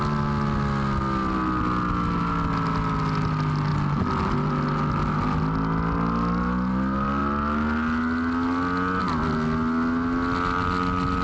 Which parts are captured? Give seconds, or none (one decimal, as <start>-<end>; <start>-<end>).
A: 0.0-11.2